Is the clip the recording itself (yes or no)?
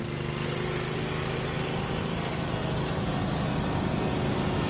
yes